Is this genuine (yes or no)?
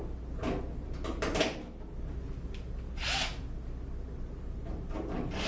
yes